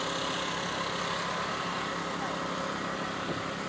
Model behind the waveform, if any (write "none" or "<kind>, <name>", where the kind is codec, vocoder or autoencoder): none